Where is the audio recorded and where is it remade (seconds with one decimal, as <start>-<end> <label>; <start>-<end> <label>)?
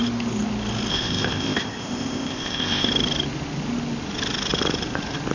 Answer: 0.0-0.9 recorded; 0.9-2.9 remade; 2.9-5.3 recorded